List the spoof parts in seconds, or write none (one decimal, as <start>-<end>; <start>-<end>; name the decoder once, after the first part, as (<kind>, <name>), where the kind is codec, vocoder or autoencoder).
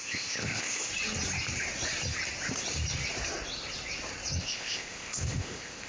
0.0-0.9 (codec, ZipCodec); 4.4-5.9